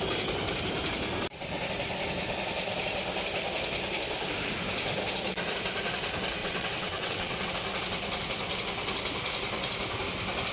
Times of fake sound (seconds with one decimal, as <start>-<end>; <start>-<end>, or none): 6.4-7.5